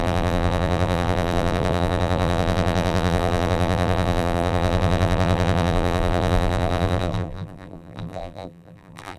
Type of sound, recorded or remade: remade